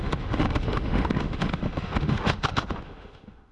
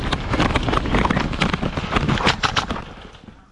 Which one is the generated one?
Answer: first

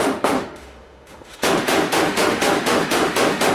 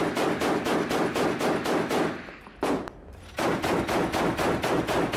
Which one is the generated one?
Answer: first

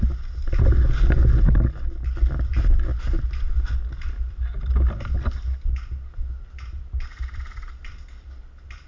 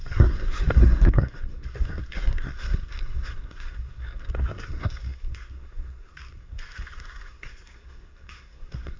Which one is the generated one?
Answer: second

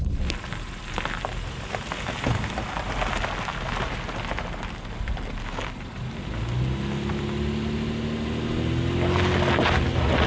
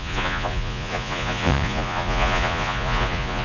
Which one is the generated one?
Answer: second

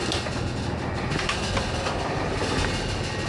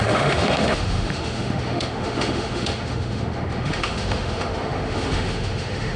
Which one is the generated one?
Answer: second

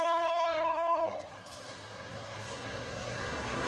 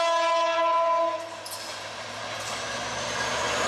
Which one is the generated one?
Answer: first